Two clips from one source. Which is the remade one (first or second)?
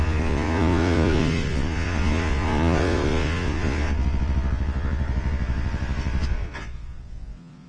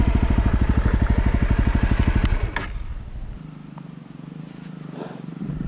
first